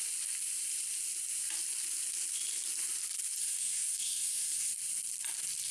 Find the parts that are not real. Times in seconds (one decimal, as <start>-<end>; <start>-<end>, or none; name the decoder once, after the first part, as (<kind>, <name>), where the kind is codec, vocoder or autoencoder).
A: 3.4-4.7 (codec, SNAC)